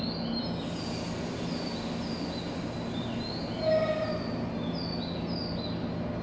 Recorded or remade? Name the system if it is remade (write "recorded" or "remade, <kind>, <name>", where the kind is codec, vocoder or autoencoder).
recorded